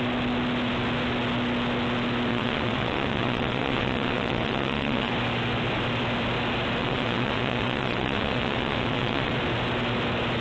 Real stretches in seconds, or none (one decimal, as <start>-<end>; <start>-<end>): 0.0-2.3; 5.1-6.8; 9.3-10.4